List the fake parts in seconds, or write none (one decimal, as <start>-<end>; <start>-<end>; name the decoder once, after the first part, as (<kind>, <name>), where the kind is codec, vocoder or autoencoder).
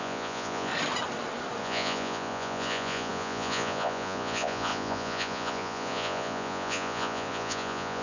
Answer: 0.0-0.7 (vocoder, Vocos); 1.6-8.0